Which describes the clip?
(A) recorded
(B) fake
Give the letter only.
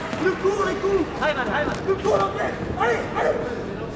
A